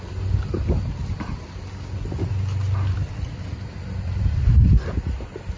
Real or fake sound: real